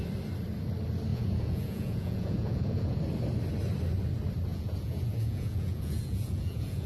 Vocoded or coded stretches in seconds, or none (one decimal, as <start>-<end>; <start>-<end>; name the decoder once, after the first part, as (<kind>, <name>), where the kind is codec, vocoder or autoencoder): 1.1-3.0 (vocoder, Vocos); 4.5-6.9